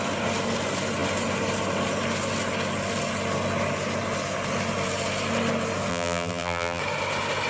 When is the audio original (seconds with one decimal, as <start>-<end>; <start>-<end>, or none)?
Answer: 0.0-5.9; 6.8-7.5